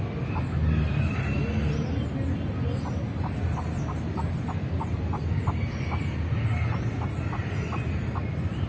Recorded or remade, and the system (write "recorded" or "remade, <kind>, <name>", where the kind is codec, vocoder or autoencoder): recorded